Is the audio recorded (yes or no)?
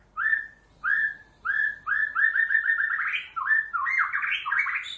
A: yes